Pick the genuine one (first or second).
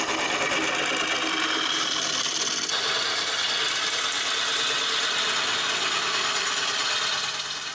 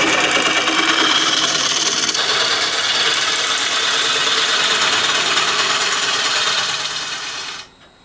first